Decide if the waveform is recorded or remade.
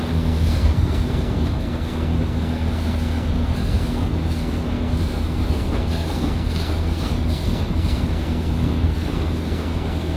remade